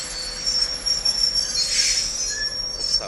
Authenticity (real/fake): fake